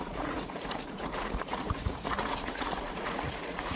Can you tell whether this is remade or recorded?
remade